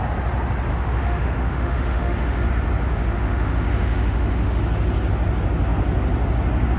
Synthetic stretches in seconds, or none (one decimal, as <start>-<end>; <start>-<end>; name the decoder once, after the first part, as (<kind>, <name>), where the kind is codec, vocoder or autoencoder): 0.7-2.5 (autoencoder, DAC-VAE); 2.9-4.6